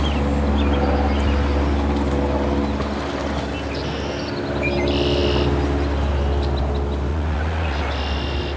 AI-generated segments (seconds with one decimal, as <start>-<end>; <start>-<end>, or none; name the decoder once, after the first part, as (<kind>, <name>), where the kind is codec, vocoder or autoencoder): 7.1-7.8 (vocoder, Vocos)